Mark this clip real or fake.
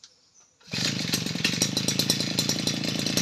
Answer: real